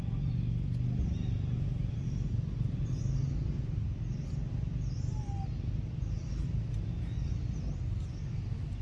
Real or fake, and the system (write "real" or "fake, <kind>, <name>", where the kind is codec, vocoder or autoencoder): real